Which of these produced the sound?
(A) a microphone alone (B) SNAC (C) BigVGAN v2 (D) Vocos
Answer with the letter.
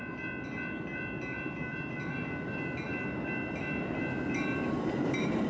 A